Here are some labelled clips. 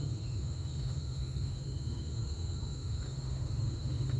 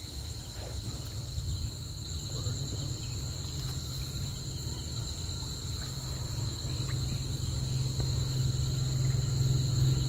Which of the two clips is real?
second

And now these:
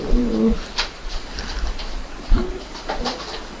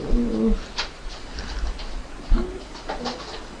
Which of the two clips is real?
second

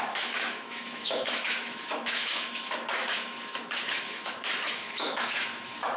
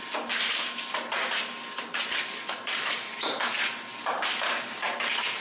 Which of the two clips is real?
second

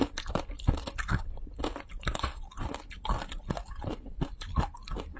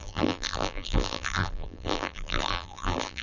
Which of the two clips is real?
first